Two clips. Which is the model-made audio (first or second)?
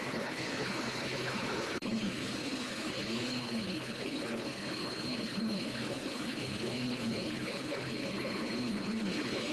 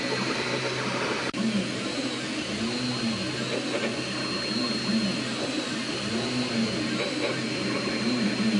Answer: first